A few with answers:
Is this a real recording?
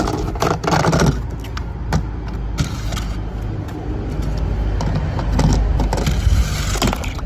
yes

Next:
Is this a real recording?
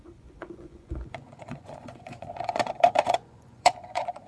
no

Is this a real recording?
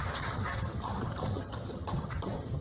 no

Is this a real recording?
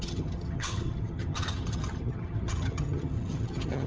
no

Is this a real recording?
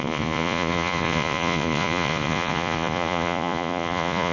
no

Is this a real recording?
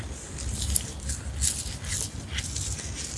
yes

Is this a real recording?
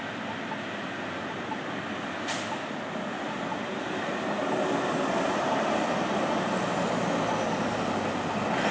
yes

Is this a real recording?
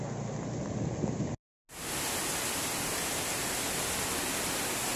yes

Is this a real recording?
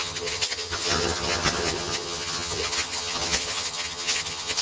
no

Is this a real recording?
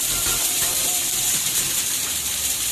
no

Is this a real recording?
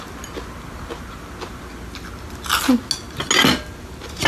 yes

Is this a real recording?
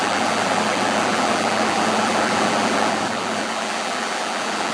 no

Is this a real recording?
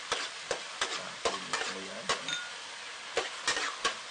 yes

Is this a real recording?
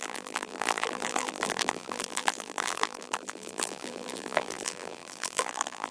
no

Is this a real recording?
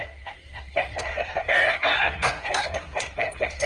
no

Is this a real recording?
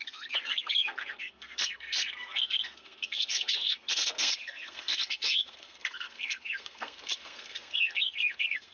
no